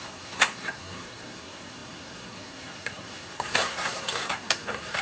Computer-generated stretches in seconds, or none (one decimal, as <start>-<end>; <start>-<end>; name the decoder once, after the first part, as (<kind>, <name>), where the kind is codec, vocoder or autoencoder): 0.0-5.0 (codec, SNAC)